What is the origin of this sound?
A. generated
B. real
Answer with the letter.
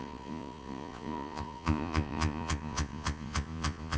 A